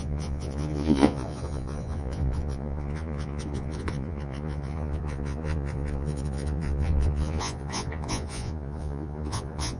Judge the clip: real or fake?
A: fake